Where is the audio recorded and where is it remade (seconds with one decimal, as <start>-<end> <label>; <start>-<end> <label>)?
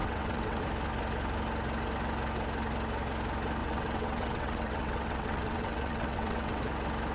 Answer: 0.0-0.6 remade; 0.6-3.6 recorded; 3.6-6.6 remade; 6.6-7.1 recorded